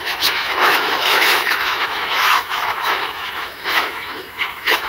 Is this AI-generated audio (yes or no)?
yes